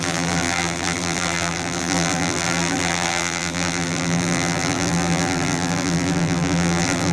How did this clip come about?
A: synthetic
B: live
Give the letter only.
A